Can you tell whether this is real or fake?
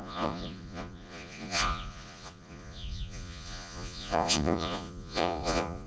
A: fake